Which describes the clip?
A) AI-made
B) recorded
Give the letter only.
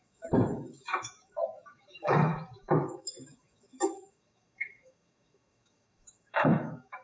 A